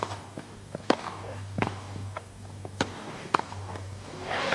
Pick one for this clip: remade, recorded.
remade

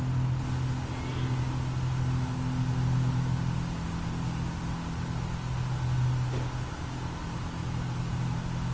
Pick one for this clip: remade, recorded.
recorded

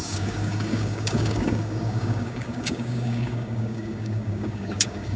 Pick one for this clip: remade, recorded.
remade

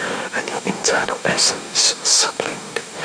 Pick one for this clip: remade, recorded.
remade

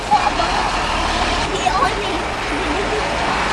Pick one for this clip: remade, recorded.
recorded